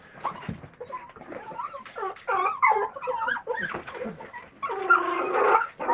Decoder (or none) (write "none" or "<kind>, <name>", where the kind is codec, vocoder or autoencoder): none